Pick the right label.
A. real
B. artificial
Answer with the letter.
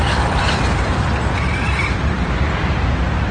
B